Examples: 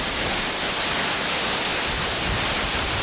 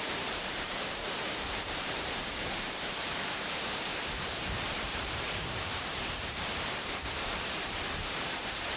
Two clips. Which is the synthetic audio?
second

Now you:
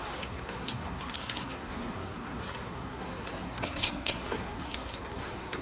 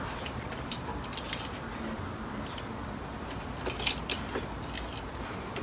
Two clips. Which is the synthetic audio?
first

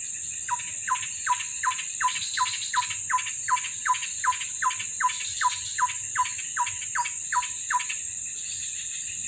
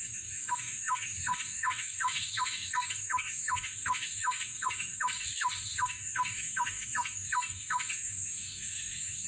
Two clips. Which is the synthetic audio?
second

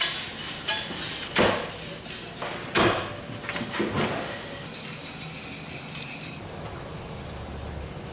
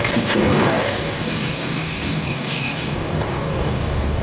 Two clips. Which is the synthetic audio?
second